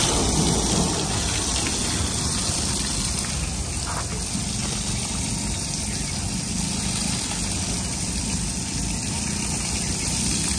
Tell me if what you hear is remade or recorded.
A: recorded